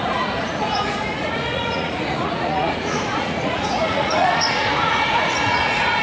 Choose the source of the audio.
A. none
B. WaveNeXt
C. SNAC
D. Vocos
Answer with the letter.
D